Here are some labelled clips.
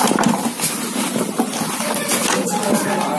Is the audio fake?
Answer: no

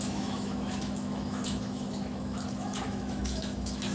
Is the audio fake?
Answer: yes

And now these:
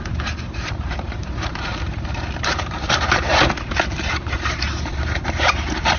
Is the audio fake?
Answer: yes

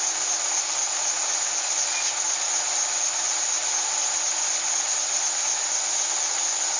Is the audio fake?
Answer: no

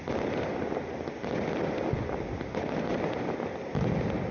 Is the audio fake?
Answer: no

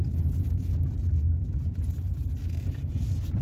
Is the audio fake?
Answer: no